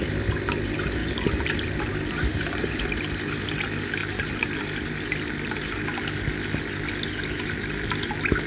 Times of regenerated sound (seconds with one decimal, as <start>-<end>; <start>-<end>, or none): 1.0-2.8; 4.0-4.6